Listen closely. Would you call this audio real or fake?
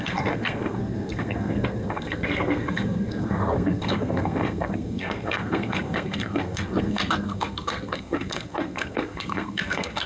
fake